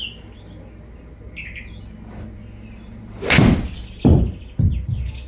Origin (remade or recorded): recorded